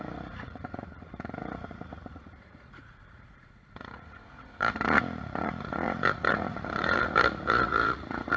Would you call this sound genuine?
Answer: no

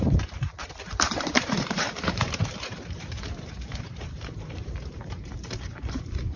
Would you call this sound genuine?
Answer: no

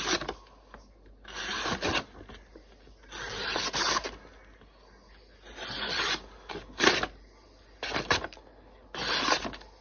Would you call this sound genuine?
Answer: yes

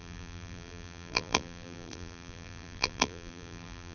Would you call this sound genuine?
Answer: no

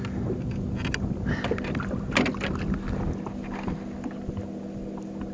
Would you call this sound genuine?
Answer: yes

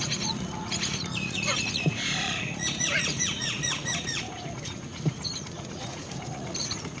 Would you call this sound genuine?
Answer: no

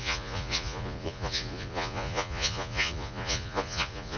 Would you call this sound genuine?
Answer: no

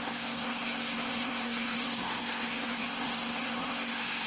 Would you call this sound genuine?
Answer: no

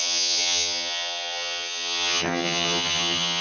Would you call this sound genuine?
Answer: no